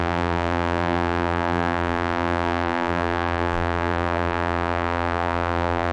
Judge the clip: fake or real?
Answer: fake